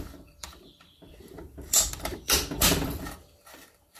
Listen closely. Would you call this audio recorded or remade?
remade